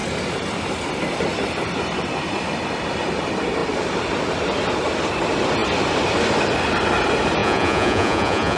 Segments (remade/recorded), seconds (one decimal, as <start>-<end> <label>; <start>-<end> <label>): 0.0-7.4 recorded; 7.4-8.6 remade